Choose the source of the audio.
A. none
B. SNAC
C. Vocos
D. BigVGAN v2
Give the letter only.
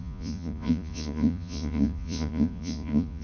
C